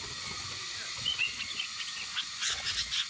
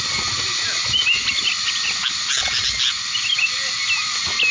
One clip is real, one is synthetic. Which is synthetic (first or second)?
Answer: first